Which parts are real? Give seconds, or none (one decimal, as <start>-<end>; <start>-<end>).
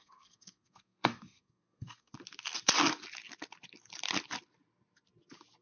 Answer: 2.1-5.6